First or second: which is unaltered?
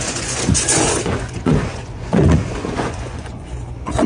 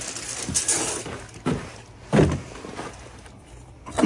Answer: second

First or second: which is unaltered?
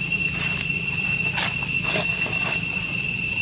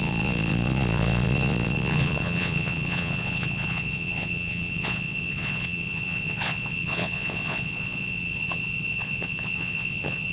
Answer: first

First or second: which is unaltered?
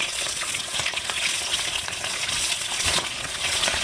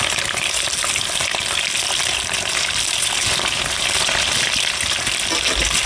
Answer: second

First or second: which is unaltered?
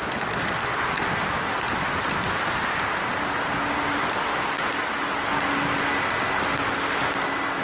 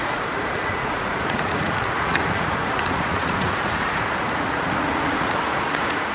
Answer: first